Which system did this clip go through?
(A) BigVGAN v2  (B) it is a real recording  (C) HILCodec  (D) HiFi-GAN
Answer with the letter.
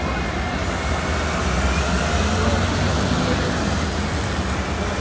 B